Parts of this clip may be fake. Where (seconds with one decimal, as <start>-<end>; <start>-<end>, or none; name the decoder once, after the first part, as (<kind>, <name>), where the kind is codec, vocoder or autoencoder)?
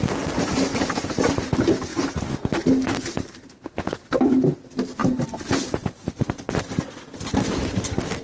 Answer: 0.7-1.3 (vocoder, BigVGAN v2); 1.9-4.5; 5.0-6.8